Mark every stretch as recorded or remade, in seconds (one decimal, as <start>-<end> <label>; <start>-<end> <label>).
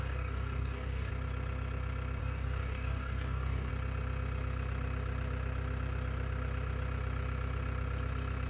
0.0-1.1 remade; 1.1-2.2 recorded; 2.2-3.7 remade; 3.7-8.5 recorded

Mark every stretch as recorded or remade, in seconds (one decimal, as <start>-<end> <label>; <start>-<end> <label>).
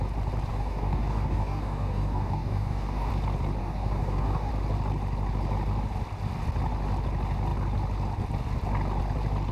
0.0-0.5 recorded; 0.5-3.1 remade; 3.1-3.6 recorded; 3.6-4.5 remade; 4.5-9.5 recorded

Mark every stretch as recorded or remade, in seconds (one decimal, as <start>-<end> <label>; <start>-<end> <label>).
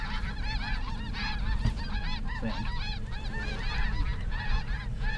0.0-5.2 recorded